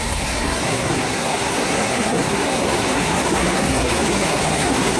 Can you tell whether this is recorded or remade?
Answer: remade